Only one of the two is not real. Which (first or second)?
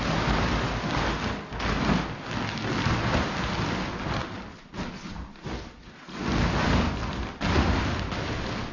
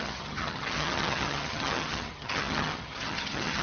second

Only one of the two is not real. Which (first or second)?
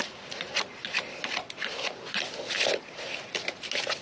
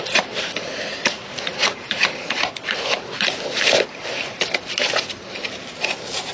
second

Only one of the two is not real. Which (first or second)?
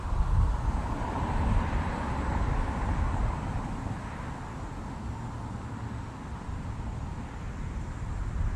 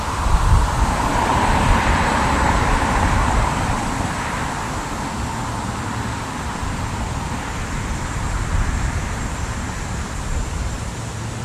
second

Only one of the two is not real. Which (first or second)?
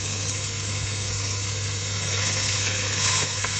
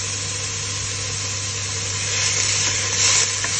first